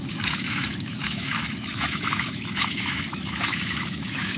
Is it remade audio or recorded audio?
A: remade